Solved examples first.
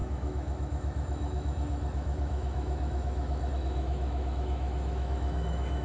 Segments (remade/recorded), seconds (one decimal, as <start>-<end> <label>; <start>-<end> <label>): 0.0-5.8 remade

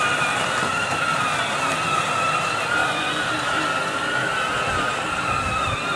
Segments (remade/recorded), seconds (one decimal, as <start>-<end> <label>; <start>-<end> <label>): 0.0-2.8 recorded; 2.8-3.3 remade; 3.3-6.0 recorded

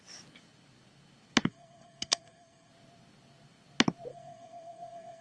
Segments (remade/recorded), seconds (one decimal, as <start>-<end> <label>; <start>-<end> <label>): 0.0-1.5 recorded; 1.5-2.7 remade; 2.7-4.1 recorded; 4.1-5.2 remade